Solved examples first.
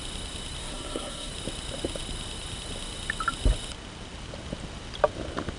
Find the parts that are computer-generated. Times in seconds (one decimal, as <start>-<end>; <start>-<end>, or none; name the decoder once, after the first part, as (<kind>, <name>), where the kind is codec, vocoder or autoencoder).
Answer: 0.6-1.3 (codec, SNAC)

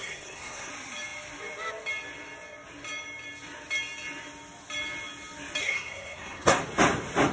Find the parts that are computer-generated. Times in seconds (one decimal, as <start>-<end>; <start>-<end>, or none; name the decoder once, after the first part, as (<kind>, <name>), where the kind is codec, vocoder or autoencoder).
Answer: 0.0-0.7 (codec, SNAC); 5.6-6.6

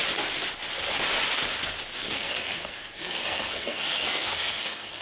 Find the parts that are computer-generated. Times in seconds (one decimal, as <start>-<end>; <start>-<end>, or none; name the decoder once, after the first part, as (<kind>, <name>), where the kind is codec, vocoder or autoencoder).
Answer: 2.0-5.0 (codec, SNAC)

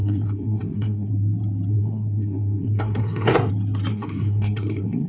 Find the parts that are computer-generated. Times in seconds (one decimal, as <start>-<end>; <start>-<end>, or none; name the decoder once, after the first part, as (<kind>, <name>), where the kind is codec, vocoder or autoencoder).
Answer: 0.0-1.1 (codec, SNAC); 1.7-3.5; 3.9-5.1

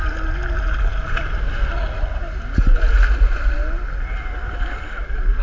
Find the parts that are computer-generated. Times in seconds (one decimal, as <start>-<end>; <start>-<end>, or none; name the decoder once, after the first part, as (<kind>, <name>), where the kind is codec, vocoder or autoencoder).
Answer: none

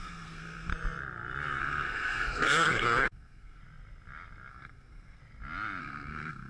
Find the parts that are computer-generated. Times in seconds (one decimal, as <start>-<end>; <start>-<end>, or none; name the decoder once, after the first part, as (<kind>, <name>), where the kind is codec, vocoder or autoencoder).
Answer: 0.0-0.7 (codec, SNAC); 1.6-3.6; 4.5-5.2; 5.8-6.5

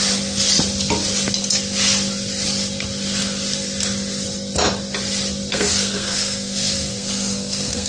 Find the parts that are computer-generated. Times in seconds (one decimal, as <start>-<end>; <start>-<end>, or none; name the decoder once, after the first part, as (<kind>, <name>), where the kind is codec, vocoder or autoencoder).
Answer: 5.5-7.9 (codec, SNAC)

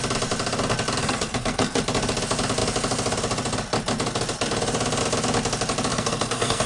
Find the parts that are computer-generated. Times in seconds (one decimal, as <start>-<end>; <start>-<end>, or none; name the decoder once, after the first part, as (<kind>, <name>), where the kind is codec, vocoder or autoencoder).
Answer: 1.0-1.8 (codec, SNAC); 5.9-6.7